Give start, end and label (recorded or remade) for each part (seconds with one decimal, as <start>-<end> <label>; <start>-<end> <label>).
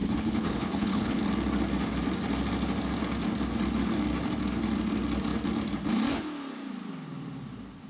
0.0-1.2 remade; 1.2-7.9 recorded